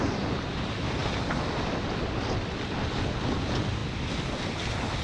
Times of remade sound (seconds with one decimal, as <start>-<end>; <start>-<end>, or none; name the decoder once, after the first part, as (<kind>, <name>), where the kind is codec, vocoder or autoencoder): none